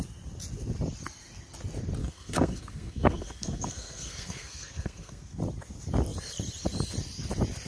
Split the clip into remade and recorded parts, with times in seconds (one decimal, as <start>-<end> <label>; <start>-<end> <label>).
0.0-2.0 recorded; 2.0-5.4 remade; 5.4-7.7 recorded